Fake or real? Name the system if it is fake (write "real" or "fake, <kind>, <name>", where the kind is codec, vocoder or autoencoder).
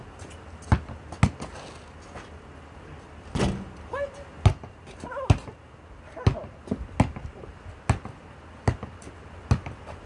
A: real